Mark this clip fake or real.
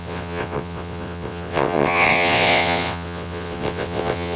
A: fake